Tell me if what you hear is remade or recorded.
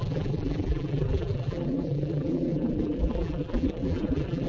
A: remade